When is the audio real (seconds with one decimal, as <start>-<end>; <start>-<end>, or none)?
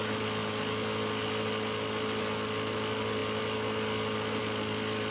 0.0-5.1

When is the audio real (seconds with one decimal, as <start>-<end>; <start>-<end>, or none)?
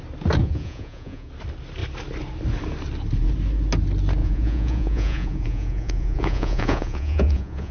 0.0-0.4; 1.3-4.2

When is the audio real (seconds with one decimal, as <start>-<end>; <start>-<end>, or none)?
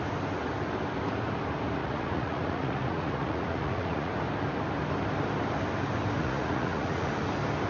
0.0-1.8; 4.1-6.2; 7.1-7.7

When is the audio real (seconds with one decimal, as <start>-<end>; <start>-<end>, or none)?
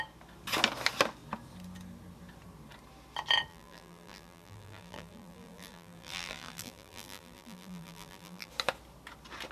0.0-3.5; 8.5-9.5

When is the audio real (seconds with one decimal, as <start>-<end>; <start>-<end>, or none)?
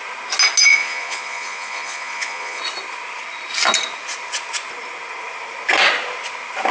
0.0-0.6; 2.6-6.7